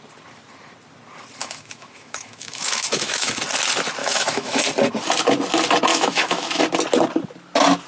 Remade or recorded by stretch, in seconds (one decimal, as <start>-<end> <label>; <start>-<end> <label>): 0.0-1.4 recorded; 1.4-3.4 remade; 3.4-4.0 recorded; 4.0-4.6 remade; 4.6-5.9 recorded; 5.9-6.6 remade; 6.6-7.9 recorded